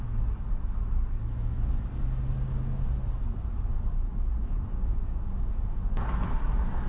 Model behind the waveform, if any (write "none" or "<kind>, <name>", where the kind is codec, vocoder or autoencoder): none